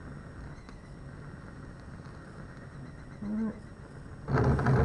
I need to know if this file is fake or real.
real